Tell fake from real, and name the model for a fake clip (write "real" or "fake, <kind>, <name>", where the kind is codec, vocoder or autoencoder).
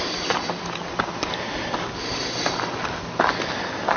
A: real